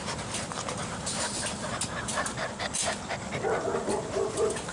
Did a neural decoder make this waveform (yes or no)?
no